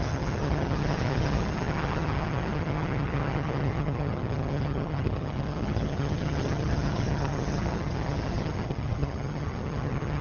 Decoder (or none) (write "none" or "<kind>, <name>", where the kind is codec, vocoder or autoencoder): vocoder, HiFi-GAN